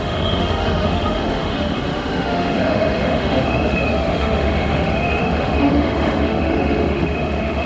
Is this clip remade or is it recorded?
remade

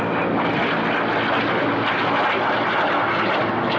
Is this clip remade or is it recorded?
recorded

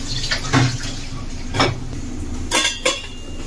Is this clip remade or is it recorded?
recorded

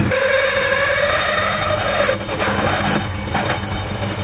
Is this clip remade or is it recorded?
recorded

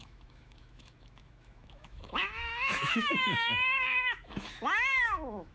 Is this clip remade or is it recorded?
remade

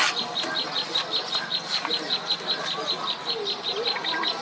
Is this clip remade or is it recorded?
recorded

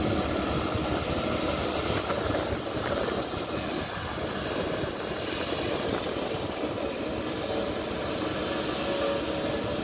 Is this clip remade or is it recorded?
recorded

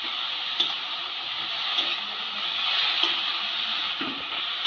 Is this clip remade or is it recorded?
recorded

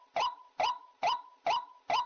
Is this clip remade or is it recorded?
recorded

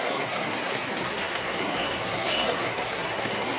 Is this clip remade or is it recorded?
remade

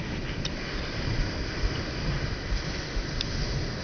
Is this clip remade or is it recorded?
recorded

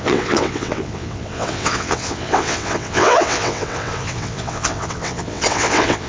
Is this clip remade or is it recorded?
remade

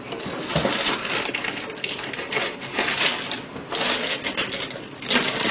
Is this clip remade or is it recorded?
recorded